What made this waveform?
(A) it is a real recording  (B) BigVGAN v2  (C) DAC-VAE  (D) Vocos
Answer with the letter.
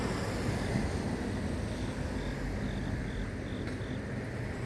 A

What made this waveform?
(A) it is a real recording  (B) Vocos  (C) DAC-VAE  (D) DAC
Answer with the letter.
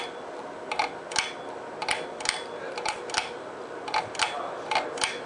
A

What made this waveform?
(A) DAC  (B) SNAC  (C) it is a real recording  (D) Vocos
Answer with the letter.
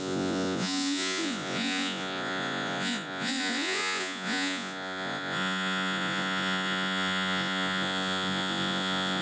D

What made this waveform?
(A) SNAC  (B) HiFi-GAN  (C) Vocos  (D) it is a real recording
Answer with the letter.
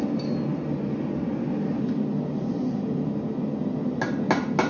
D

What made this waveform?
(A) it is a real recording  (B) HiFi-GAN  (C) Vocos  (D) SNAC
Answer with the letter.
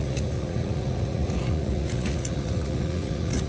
C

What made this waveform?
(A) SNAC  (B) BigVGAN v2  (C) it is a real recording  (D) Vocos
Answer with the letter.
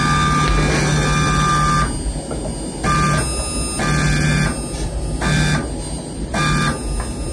C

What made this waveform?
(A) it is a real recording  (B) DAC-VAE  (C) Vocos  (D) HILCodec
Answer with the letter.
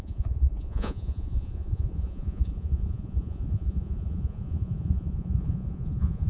C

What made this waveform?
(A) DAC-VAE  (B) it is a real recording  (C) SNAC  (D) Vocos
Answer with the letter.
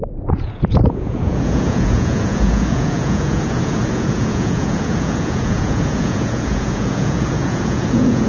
D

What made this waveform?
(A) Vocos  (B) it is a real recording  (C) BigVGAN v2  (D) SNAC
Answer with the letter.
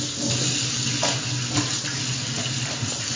B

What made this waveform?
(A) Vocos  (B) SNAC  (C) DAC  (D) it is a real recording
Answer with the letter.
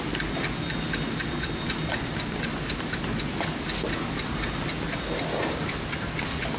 D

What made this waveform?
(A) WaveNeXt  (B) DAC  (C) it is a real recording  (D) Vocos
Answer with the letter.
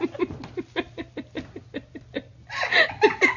C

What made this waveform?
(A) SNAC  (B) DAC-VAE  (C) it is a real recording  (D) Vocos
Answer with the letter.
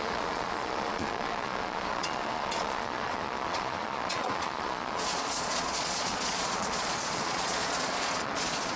D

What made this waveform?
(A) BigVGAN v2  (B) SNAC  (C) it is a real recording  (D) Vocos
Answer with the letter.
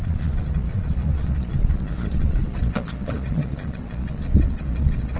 D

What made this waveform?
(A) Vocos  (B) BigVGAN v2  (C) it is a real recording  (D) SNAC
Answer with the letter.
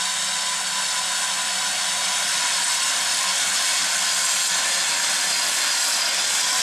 C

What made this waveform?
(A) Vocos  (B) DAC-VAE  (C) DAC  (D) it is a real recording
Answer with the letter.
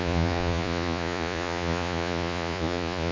A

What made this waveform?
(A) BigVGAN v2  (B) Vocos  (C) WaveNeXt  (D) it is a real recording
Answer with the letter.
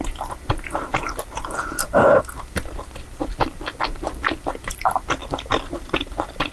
D